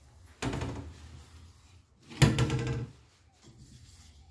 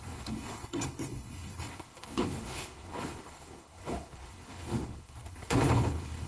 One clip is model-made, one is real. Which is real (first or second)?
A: first